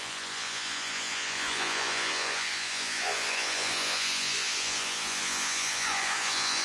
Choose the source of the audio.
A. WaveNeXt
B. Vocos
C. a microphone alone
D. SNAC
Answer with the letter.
B